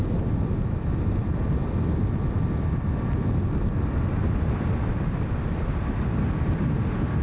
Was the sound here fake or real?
real